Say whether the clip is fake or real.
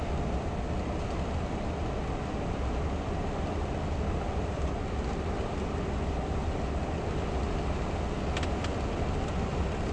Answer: real